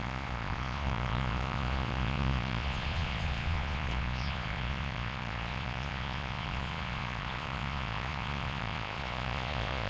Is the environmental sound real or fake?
fake